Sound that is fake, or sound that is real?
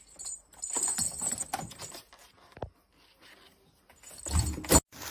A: real